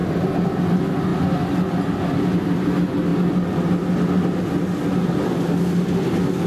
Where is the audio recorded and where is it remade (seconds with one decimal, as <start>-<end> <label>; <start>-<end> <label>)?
0.0-6.5 recorded